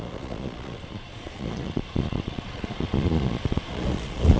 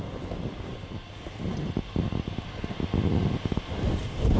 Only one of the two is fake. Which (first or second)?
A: first